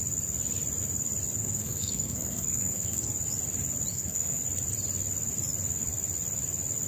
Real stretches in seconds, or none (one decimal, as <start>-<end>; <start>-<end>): 0.0-1.4; 3.1-3.9; 4.4-6.9